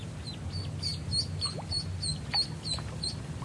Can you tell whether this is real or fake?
real